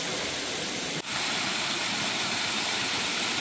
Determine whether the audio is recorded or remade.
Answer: recorded